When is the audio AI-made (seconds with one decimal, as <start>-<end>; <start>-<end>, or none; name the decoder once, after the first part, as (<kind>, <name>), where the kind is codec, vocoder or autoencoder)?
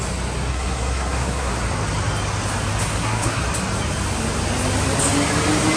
0.5-1.5 (codec, SNAC); 2.8-3.4